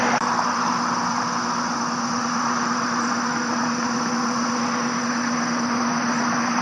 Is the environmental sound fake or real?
real